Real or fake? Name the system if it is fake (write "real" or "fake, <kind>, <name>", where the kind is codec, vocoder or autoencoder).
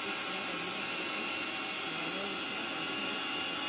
real